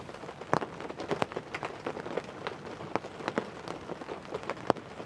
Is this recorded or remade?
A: recorded